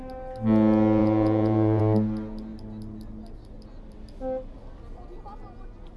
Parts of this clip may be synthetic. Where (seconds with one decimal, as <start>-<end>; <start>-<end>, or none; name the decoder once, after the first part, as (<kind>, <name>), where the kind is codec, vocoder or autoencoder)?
1.0-1.8 (vocoder, Vocos)

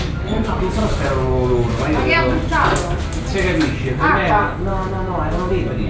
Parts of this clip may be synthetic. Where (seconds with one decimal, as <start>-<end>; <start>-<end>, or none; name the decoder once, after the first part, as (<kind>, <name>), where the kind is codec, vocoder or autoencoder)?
none

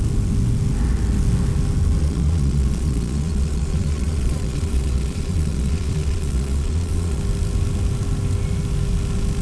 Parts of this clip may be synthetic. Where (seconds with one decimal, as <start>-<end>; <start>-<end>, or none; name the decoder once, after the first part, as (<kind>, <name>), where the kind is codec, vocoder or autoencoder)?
2.0-7.2 (vocoder, Vocos)

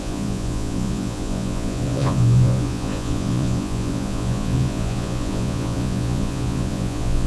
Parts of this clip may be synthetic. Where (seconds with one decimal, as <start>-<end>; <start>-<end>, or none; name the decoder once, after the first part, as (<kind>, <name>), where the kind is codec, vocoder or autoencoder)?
0.0-7.3 (vocoder, Vocos)

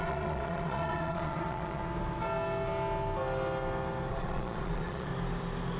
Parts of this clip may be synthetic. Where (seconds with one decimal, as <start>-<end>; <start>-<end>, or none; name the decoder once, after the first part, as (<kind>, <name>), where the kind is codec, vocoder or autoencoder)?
0.0-1.8 (vocoder, Vocos); 4.1-5.1

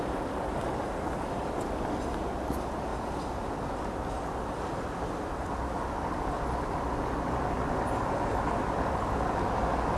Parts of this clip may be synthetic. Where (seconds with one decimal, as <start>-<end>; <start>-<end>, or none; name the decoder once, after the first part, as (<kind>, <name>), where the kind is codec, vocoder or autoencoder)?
none

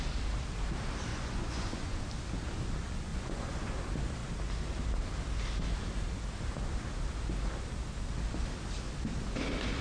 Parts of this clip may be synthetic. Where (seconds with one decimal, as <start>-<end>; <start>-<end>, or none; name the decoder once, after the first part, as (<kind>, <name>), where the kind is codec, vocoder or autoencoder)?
1.1-2.0 (vocoder, Vocos); 3.1-3.7

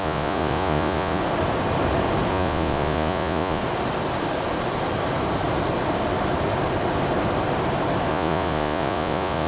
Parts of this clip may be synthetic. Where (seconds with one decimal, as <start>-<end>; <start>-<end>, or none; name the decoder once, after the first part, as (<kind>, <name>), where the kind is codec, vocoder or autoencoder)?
0.0-1.2 (vocoder, Vocos); 2.3-3.6; 8.1-9.5